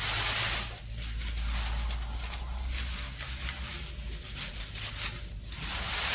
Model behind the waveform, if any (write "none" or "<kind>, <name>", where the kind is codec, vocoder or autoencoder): none